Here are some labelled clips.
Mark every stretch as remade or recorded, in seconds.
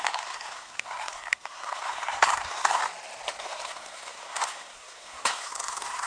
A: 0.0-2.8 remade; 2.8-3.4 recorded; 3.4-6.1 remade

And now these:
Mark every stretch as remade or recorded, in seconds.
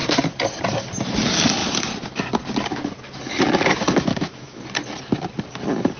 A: 0.0-4.1 recorded; 4.1-4.6 remade; 4.6-6.0 recorded